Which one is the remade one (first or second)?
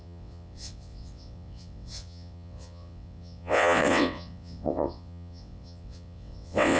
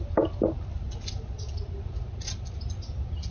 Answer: first